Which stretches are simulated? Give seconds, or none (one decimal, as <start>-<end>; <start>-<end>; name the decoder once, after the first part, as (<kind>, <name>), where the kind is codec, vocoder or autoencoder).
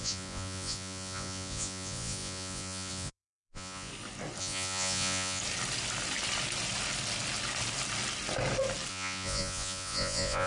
0.0-3.9 (vocoder, Vocos); 4.4-5.4; 8.9-10.5